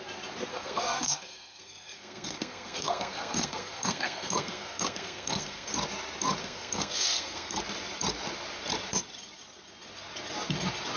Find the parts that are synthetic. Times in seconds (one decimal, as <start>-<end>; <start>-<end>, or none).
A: 0.5-5.7; 6.4-7.6